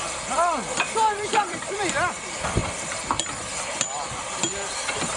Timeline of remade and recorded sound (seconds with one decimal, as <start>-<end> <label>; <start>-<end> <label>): 0.0-5.2 remade